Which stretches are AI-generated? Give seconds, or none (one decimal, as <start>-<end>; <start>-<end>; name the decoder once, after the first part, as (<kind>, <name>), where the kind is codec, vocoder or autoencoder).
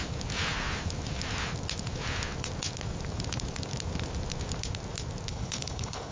5.3-6.1 (codec, HILCodec)